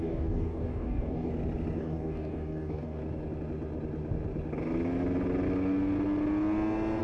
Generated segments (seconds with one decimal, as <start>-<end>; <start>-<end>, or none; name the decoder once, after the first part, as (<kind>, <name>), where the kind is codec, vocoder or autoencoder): 0.0-1.3 (codec, DAC); 1.8-3.0